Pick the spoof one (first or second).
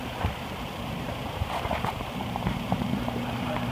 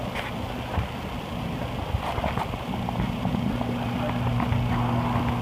first